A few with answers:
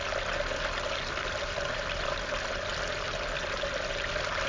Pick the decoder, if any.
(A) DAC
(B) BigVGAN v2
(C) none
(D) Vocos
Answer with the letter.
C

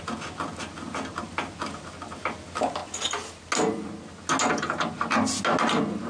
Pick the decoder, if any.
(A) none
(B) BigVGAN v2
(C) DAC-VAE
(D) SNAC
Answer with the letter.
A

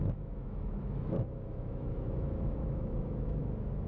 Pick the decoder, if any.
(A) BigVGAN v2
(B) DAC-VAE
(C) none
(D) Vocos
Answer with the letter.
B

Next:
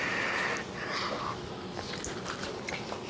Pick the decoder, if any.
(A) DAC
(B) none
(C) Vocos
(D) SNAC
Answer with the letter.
B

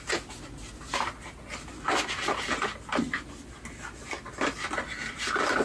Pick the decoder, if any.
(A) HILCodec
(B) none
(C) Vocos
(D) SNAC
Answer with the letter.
B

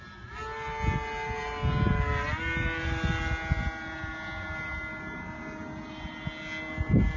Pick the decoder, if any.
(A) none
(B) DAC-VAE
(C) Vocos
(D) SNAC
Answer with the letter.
A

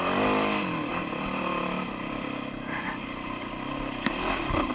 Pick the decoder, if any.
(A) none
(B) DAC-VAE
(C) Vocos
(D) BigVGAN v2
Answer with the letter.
A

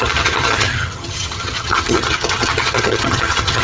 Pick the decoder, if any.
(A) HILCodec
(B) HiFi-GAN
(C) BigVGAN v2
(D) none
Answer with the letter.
B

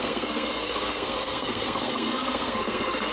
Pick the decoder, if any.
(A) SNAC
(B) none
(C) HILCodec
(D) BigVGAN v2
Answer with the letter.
A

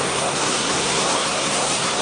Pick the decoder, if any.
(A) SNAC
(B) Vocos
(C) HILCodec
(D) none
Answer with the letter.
A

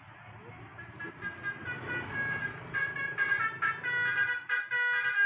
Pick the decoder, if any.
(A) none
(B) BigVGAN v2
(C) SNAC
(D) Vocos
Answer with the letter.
A